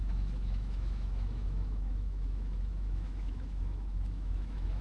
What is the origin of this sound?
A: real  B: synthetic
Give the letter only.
B